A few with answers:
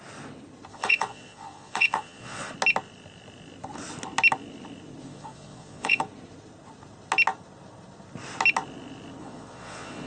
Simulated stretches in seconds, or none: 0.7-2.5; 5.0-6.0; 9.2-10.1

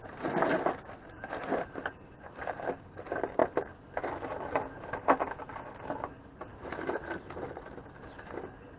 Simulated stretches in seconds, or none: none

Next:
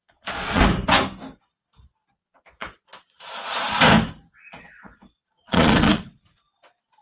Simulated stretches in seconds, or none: 0.0-0.6; 2.2-3.6; 4.5-6.0

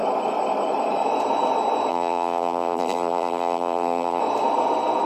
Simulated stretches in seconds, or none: 1.9-4.2

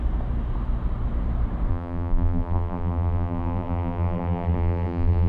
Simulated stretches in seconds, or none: 1.7-5.3

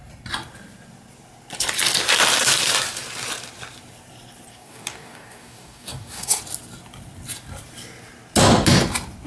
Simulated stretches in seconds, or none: 4.5-6.4